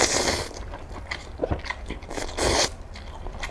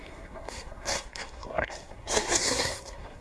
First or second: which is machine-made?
second